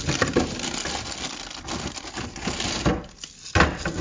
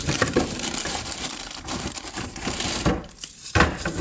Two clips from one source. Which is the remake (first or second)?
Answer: second